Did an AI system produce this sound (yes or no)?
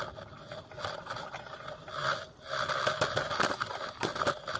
no